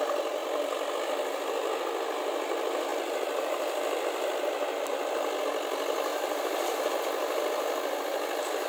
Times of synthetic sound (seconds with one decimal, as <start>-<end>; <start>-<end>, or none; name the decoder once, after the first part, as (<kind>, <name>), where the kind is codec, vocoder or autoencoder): 0.4-0.9 (vocoder, BigVGAN v2); 2.9-5.4; 6.1-7.0